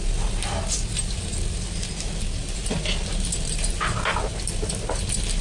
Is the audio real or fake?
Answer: real